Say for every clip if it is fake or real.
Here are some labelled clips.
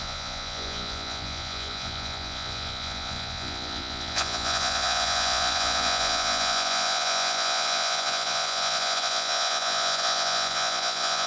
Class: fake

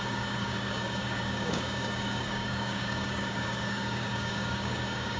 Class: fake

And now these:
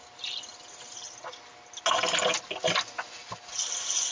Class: real